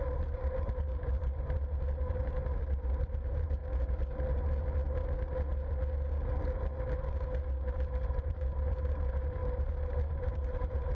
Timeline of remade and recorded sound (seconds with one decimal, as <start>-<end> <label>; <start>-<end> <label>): 0.0-1.2 remade; 1.2-2.6 recorded; 2.6-3.6 remade; 3.6-8.1 recorded; 8.1-10.9 remade